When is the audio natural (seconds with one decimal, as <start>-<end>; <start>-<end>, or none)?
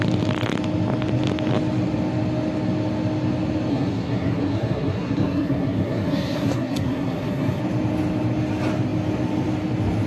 0.0-3.7; 7.6-10.1